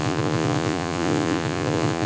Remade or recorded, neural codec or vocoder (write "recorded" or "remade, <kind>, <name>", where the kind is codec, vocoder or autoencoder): remade, vocoder, Vocos